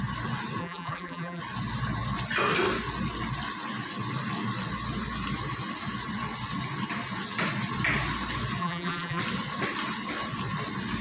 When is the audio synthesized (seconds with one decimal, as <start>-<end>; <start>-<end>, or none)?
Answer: 0.6-1.4; 8.6-9.2